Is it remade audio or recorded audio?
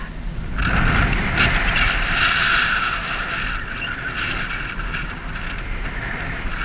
recorded